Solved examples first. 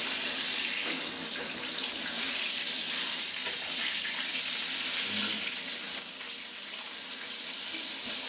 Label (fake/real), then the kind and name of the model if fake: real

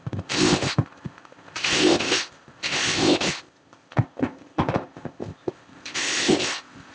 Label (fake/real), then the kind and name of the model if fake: fake, codec, ZipCodec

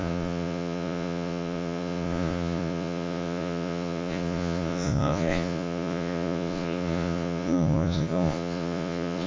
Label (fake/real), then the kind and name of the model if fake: fake, vocoder, Vocos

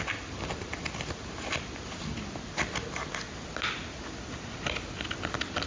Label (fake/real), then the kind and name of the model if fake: real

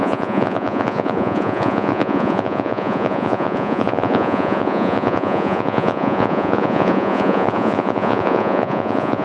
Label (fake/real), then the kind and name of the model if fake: fake, vocoder, Vocos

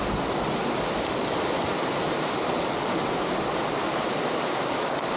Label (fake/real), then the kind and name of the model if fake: real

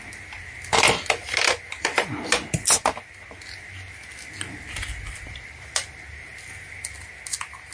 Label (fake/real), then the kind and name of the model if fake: real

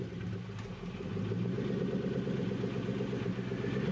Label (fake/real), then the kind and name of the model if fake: real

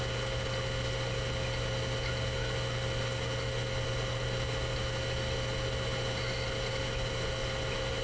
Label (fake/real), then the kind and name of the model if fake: real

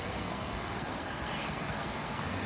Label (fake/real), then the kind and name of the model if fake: fake, codec, SNAC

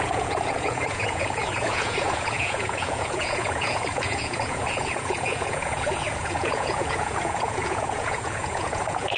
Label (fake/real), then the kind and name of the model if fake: fake, vocoder, Vocos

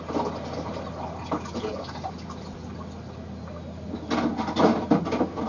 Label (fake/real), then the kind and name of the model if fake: real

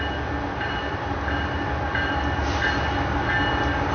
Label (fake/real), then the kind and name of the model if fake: real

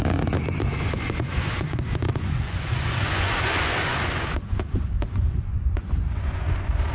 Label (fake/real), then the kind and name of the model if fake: fake, vocoder, Vocos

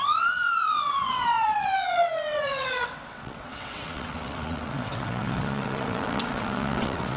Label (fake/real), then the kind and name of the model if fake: fake, vocoder, WaveNeXt